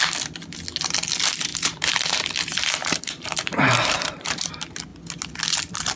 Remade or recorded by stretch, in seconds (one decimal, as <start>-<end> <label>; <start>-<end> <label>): 0.0-1.5 recorded; 1.5-4.5 remade; 4.5-6.0 recorded